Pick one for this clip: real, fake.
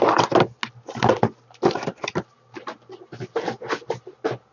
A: real